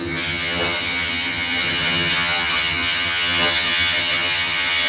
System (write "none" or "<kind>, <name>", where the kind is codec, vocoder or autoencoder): vocoder, HiFi-GAN